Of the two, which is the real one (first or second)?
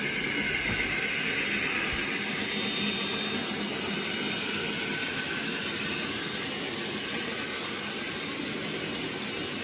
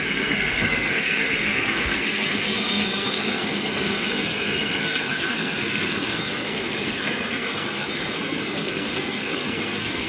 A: first